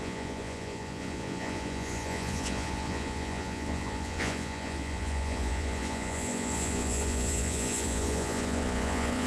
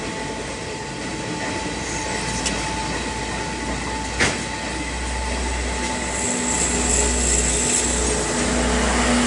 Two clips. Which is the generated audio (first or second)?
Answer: first